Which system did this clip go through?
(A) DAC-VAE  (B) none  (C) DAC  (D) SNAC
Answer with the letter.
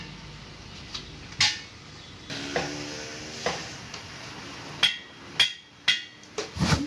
B